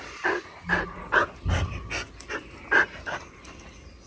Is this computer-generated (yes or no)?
no